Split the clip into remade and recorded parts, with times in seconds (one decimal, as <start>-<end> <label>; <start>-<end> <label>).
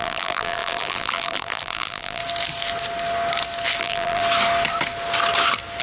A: 0.0-2.2 remade; 2.2-3.8 recorded; 3.8-4.2 remade; 4.2-5.8 recorded